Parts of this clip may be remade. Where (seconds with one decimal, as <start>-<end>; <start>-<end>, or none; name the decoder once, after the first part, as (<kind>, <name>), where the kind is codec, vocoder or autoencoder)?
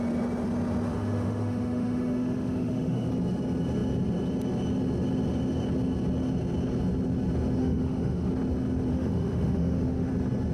0.9-3.1 (autoencoder, DAC-VAE); 7.6-8.3; 8.9-10.1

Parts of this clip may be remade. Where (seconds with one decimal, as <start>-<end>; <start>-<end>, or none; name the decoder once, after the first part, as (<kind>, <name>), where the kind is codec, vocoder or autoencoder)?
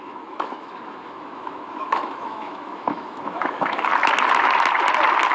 0.0-3.9 (autoencoder, DAC-VAE)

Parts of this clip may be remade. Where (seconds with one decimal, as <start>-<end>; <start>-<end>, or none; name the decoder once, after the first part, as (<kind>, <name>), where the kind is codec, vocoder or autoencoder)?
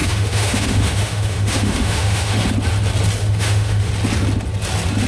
0.0-2.4 (autoencoder, DAC-VAE); 3.2-3.9